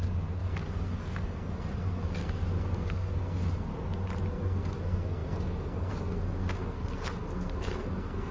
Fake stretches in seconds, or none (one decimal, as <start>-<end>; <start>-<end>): 0.0-3.7; 4.3-8.3